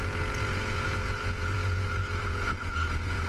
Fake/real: fake